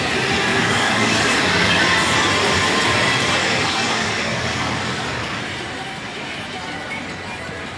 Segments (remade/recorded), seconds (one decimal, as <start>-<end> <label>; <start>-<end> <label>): 0.0-0.5 recorded; 0.5-1.8 remade; 1.8-3.4 recorded; 3.4-5.4 remade; 5.4-7.8 recorded